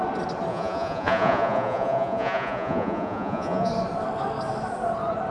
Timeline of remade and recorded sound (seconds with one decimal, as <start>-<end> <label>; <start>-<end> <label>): 0.0-0.5 recorded; 0.5-3.7 remade; 3.7-5.3 recorded